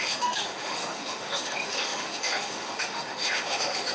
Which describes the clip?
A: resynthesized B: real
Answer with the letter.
A